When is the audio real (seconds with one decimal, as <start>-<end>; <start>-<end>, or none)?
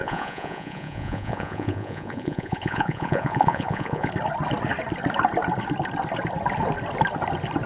4.1-7.7